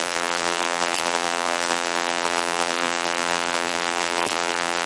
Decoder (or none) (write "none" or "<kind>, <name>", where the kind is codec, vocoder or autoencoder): vocoder, BigVGAN v2